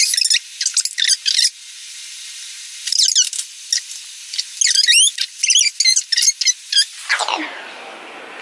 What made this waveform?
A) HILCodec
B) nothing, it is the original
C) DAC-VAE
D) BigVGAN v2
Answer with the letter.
B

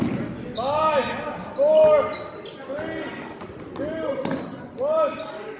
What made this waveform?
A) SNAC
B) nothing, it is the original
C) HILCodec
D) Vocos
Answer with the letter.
B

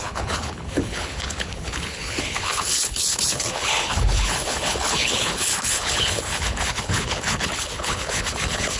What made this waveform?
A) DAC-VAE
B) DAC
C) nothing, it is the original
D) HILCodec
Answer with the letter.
D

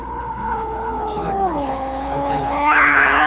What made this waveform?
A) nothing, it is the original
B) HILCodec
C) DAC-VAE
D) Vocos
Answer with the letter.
B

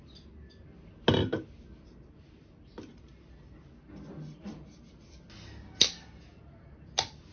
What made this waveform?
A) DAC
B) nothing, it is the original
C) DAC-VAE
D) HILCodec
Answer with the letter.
B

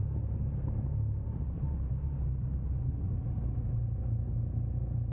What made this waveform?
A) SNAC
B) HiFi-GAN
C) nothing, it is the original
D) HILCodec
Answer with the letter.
C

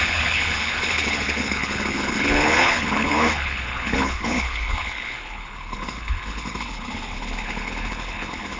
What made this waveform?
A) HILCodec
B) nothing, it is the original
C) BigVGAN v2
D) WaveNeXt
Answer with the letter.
A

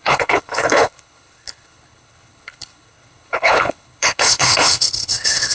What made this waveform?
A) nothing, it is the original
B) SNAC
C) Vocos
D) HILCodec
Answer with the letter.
D